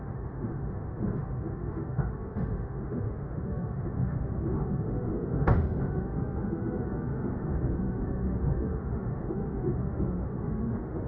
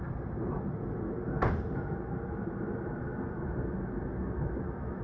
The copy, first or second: first